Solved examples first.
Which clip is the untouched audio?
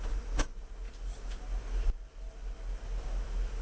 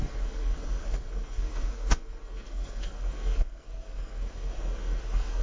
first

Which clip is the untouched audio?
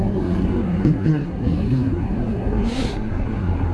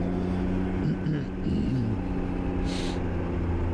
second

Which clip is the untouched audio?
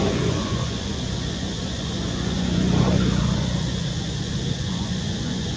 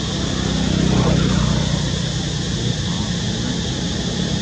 second